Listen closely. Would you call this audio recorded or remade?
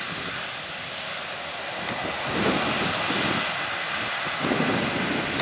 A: recorded